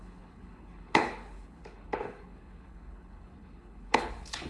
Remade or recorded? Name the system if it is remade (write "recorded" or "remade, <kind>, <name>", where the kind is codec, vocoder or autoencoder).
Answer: remade, codec, HILCodec